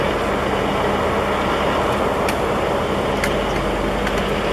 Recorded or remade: recorded